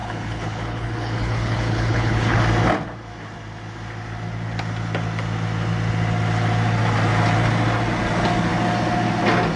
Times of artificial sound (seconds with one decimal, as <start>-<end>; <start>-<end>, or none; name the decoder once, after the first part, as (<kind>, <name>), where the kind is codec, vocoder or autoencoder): 0.0-2.4 (codec, HILCodec)